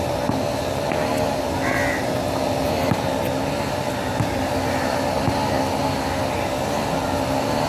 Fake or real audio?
real